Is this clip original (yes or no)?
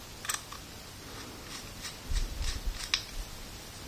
yes